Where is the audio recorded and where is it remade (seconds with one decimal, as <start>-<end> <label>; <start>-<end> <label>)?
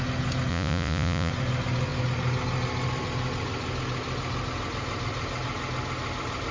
0.0-0.5 recorded; 0.5-1.3 remade; 1.3-6.5 recorded